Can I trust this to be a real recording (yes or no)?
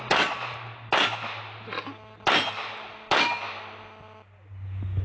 yes